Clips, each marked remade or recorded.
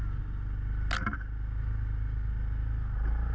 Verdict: recorded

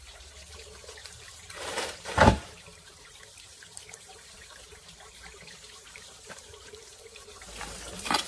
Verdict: remade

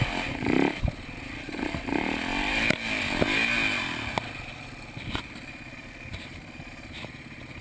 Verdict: recorded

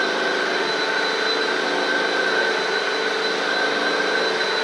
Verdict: recorded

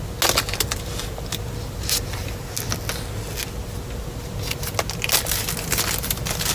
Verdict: recorded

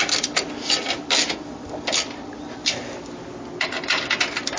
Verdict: recorded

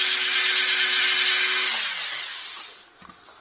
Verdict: recorded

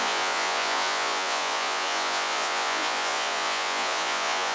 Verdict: remade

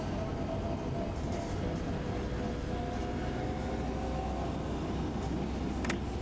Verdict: recorded